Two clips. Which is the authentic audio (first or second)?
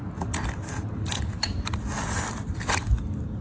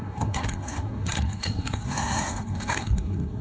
first